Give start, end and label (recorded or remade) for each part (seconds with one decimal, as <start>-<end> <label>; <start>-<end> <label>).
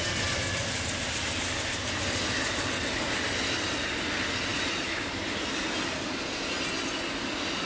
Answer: 0.0-7.7 recorded